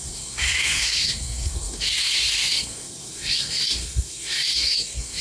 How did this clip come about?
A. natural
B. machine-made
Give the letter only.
B